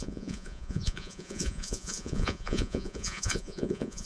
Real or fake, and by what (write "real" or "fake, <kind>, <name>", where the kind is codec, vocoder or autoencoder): fake, vocoder, Vocos